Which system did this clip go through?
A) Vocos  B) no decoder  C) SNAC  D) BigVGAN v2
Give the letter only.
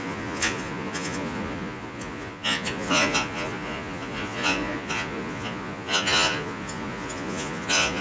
A